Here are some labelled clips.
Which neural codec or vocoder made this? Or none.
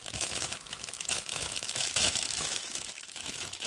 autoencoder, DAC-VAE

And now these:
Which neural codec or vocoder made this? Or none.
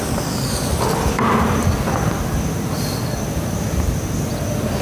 none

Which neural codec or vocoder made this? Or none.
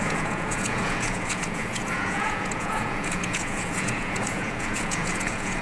vocoder, Vocos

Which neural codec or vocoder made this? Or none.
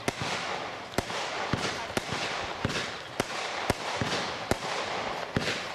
none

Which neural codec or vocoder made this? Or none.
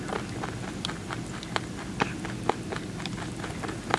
none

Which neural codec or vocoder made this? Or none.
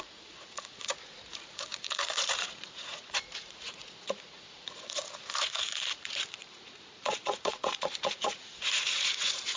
vocoder, Vocos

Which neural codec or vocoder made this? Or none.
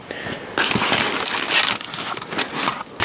none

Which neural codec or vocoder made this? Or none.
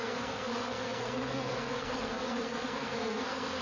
codec, SNAC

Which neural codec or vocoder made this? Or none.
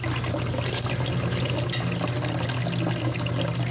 none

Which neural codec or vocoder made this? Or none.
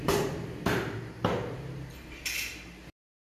vocoder, BigVGAN v2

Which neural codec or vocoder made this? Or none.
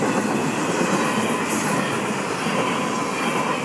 none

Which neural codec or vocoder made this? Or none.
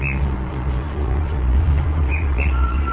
vocoder, Vocos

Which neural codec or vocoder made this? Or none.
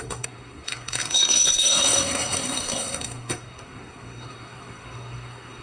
codec, SNAC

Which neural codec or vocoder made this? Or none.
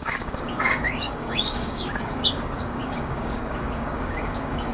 codec, DAC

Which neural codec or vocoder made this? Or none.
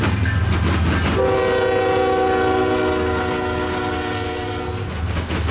none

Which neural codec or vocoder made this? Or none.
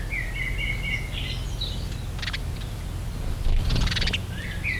none